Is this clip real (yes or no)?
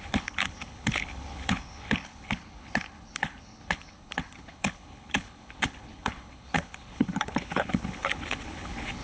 no